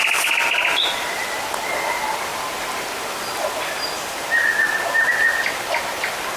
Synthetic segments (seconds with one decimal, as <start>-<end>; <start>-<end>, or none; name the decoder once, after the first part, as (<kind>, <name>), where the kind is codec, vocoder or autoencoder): none